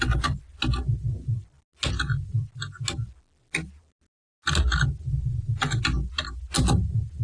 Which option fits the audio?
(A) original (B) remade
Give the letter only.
A